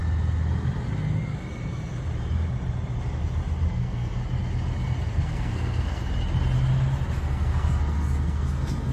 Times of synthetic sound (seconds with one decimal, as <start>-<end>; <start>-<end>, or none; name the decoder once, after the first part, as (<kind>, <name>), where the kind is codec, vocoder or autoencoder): 3.7-4.2 (codec, SNAC); 5.1-6.0; 7.2-8.9